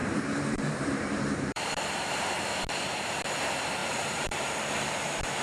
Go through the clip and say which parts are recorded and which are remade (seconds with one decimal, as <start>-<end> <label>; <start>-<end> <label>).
0.0-3.2 remade; 3.2-3.8 recorded; 3.8-4.5 remade; 4.5-5.4 recorded